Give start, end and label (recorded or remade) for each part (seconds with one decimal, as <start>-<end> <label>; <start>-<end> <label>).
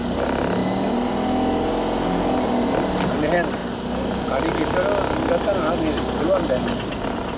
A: 0.0-7.4 recorded